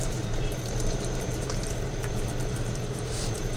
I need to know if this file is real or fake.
fake